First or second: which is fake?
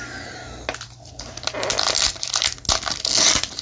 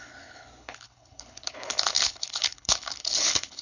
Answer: second